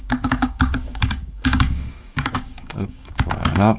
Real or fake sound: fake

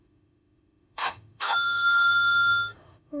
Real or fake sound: fake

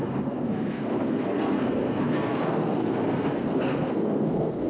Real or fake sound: fake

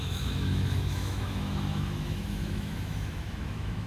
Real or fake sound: fake